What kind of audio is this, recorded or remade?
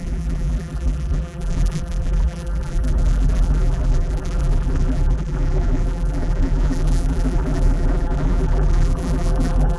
remade